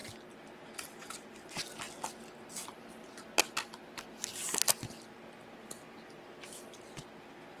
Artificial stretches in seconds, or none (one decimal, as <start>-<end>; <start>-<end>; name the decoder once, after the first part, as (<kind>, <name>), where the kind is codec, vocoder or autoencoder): none